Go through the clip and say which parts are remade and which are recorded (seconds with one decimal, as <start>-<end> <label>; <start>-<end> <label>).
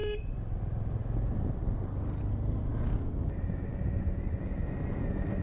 0.0-5.4 recorded